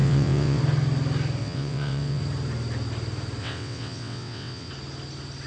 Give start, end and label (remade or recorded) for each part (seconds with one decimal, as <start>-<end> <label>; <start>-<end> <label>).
0.0-0.6 remade; 0.6-1.4 recorded; 1.4-2.2 remade; 2.2-3.4 recorded; 3.4-4.7 remade; 4.7-5.5 recorded